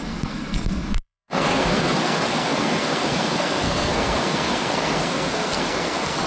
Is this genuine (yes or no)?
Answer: no